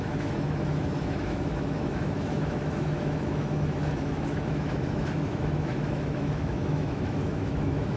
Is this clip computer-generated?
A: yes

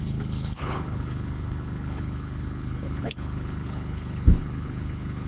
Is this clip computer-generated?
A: yes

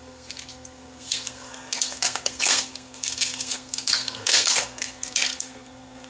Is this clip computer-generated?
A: yes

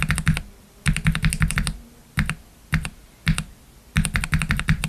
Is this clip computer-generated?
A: no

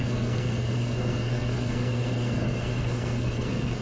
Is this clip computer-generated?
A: yes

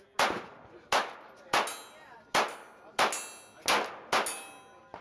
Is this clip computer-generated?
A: no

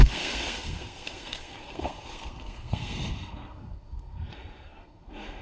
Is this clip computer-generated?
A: yes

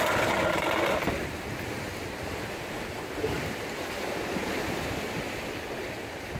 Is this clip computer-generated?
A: no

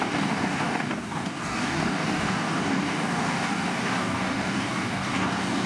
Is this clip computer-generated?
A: yes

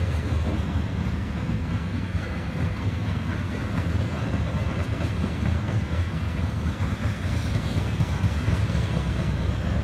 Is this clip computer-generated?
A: yes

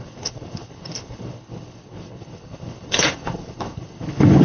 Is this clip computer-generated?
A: yes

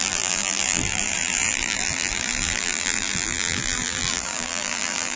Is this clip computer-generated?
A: yes